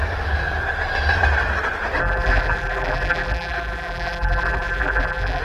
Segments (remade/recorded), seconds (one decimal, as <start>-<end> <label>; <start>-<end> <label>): 0.0-2.0 recorded; 2.0-5.4 remade